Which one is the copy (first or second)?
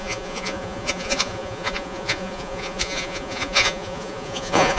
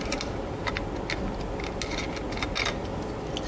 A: first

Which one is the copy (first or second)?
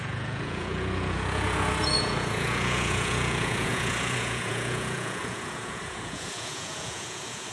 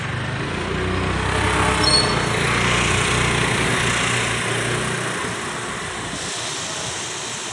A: first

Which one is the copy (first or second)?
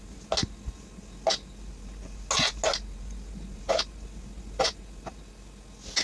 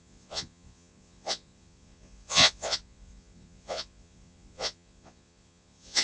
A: second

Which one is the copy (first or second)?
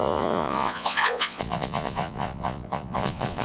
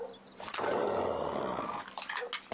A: first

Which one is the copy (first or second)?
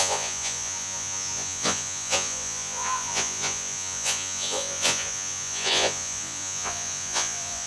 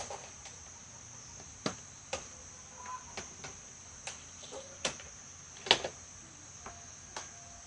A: first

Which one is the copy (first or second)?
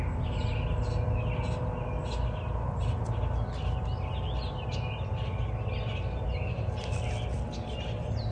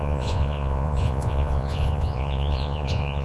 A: second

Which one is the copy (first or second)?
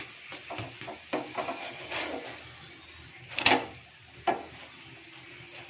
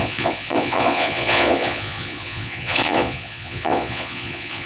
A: second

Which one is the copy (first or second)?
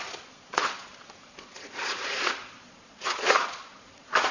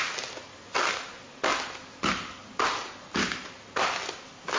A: first